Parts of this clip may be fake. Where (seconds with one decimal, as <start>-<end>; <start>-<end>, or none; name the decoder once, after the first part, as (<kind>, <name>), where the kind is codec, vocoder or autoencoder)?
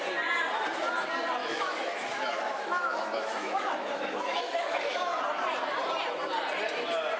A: 1.4-5.2 (autoencoder, DAC-VAE)